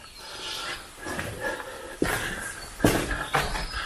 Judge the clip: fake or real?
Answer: real